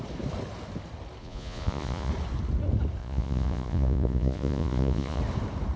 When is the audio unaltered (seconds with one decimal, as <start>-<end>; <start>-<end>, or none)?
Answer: 0.0-1.2; 2.1-3.0; 5.2-5.8